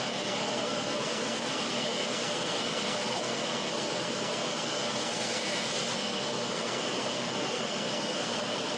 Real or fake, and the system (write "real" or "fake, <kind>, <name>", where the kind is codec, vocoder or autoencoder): fake, codec, SNAC